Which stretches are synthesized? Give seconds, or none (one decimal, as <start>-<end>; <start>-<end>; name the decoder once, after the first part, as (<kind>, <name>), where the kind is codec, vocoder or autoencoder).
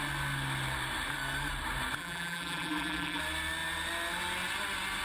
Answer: 2.0-3.2 (vocoder, BigVGAN v2)